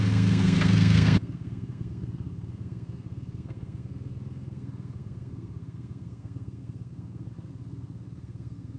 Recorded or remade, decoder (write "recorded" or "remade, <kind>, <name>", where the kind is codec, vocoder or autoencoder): remade, codec, SNAC